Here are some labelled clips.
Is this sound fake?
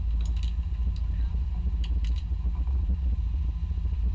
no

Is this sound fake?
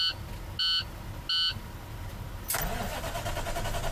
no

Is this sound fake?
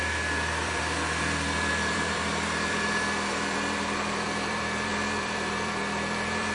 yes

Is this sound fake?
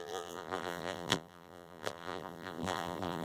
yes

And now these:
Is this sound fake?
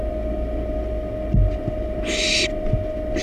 no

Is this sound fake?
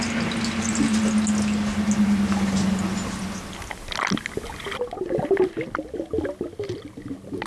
no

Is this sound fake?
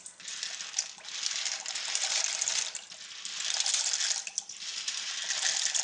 no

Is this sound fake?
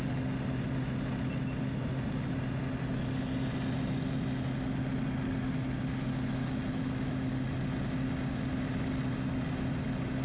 no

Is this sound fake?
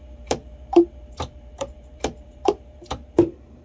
yes